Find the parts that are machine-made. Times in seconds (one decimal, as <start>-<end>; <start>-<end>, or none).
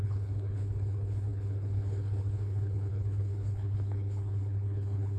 0.0-5.2